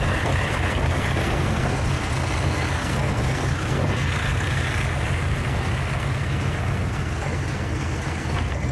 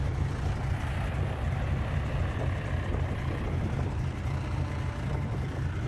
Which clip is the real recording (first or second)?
second